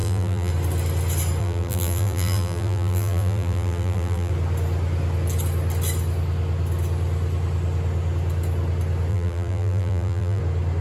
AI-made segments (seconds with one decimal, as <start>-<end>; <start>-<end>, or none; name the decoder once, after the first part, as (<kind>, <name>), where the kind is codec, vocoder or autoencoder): 0.0-0.5 (vocoder, BigVGAN v2); 1.4-4.3; 9.1-10.4